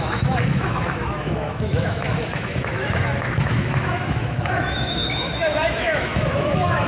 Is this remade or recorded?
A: remade